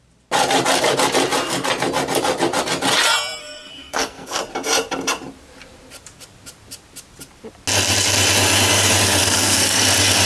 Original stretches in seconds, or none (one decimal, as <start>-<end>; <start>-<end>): 0.0-3.4; 4.4-9.2; 9.8-10.3